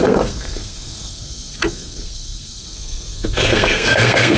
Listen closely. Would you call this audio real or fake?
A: fake